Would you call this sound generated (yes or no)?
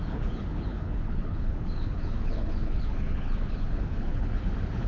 yes